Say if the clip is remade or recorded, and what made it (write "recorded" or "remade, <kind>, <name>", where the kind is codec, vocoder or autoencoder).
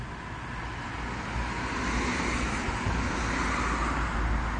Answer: recorded